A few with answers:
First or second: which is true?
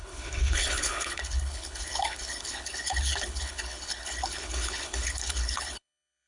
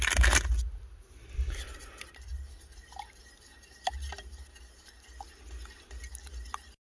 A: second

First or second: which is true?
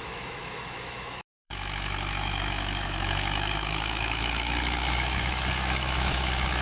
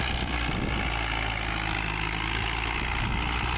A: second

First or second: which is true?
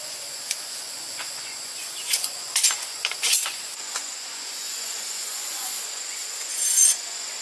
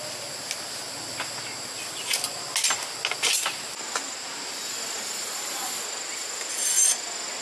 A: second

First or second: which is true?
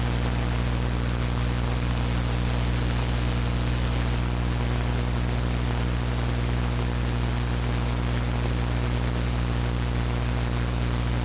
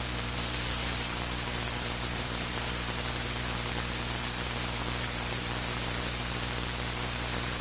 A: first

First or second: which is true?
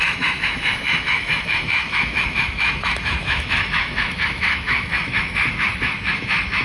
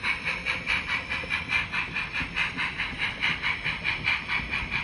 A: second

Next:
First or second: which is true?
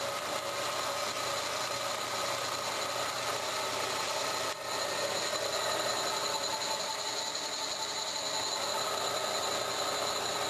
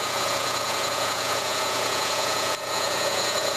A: first